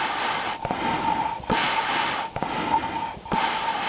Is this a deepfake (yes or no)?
no